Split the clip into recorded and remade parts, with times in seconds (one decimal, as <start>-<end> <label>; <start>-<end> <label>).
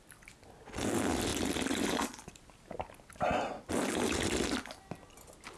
0.0-5.6 recorded